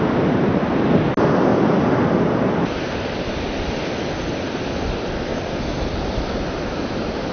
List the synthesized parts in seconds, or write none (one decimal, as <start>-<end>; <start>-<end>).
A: none